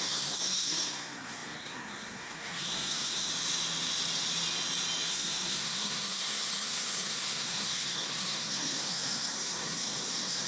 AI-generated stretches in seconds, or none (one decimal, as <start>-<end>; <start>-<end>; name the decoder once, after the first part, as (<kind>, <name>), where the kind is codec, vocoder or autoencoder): 0.0-3.3 (codec, SNAC); 5.1-10.5